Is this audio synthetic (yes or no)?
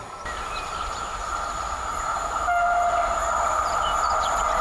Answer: no